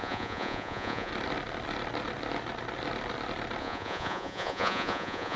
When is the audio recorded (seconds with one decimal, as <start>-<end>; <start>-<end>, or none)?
1.1-3.6